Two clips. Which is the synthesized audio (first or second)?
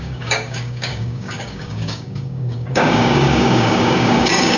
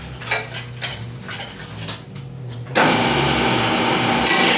first